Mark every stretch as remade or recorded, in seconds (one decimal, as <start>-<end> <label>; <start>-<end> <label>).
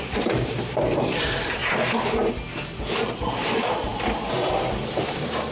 0.0-1.6 remade; 1.6-3.1 recorded; 3.1-3.9 remade; 3.9-4.5 recorded; 4.5-5.5 remade